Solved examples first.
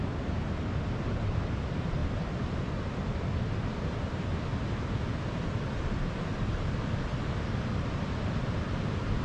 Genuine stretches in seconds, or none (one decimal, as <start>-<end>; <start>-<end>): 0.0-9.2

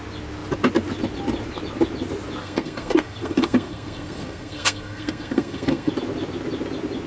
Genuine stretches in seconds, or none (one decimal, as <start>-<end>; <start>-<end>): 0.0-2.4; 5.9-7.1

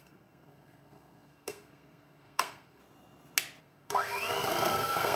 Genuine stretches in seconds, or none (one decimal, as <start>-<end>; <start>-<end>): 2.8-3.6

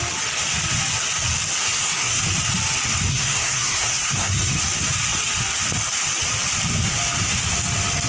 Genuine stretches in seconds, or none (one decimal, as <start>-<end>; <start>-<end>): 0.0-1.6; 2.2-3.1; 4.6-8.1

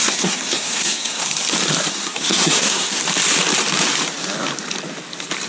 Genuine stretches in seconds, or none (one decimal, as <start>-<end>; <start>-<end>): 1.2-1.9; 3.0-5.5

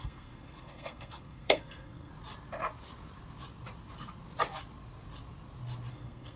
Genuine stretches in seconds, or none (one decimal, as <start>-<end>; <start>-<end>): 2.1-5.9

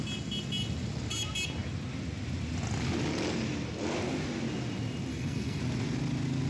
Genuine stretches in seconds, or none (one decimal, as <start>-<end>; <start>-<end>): 0.0-5.1; 5.6-6.5